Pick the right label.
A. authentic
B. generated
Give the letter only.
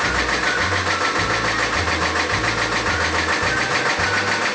A